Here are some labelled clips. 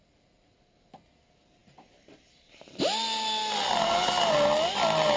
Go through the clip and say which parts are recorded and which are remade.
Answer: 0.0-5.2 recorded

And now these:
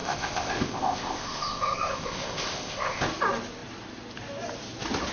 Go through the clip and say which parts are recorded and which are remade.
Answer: 0.0-3.1 remade; 3.1-5.1 recorded